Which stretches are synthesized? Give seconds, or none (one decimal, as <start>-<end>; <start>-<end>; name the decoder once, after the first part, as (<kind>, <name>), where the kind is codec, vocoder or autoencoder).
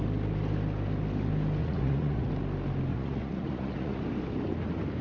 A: 1.6-2.3 (vocoder, Vocos); 2.9-4.0